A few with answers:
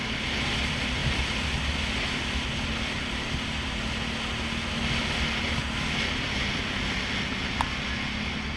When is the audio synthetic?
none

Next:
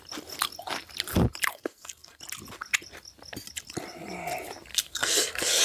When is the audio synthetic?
1.5-2.2 (codec, SNAC); 4.7-5.6

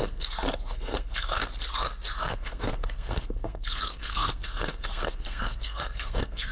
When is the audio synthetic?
0.0-1.4 (codec, SNAC); 2.1-6.5